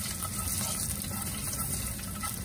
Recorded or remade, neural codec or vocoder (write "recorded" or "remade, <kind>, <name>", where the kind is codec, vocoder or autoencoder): recorded